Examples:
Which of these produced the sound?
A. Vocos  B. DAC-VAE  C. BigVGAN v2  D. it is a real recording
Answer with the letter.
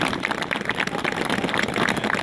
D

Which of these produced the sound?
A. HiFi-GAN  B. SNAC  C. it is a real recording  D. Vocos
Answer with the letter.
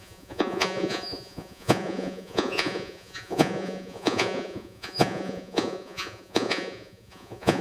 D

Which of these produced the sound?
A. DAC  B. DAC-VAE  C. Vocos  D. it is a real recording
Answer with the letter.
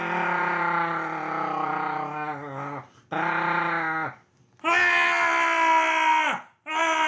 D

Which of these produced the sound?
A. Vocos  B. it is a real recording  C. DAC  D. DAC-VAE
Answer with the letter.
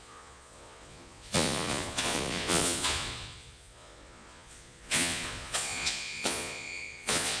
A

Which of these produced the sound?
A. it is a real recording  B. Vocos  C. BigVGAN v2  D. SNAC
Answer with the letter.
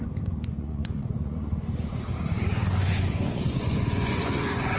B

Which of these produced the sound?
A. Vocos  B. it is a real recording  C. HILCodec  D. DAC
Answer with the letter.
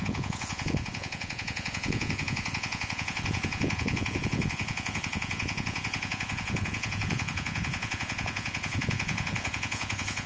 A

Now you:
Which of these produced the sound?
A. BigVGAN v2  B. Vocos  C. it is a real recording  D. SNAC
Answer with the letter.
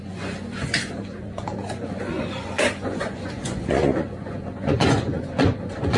B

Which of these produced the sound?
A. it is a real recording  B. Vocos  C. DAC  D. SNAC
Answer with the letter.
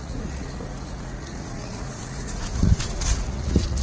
B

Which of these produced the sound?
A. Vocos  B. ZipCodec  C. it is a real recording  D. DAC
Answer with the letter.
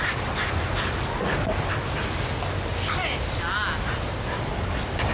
C